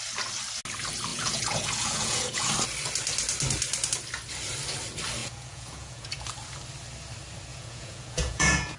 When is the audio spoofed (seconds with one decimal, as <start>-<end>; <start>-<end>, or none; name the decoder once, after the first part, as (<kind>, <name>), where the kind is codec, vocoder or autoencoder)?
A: 1.1-2.5 (vocoder, Vocos); 5.2-6.1; 7.5-8.8